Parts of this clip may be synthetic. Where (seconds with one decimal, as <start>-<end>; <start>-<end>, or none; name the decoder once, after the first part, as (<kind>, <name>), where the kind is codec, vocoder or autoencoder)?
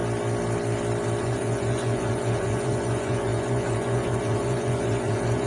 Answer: 1.2-5.5 (vocoder, Vocos)